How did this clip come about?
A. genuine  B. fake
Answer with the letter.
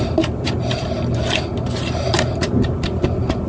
A